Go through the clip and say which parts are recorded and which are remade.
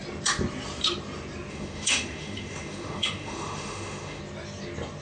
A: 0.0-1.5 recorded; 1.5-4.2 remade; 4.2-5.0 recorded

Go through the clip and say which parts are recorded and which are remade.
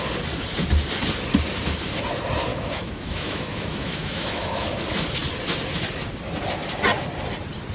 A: 0.0-2.5 recorded; 2.5-4.7 remade; 4.7-7.7 recorded